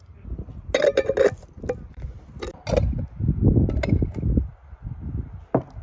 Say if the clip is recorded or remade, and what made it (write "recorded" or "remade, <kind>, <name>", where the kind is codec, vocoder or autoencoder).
recorded